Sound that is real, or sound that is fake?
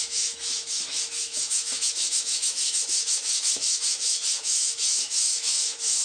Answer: fake